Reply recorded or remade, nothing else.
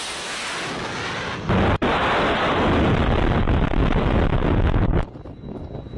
recorded